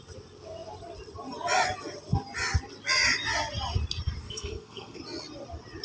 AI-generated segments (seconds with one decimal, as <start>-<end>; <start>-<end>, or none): 4.2-5.0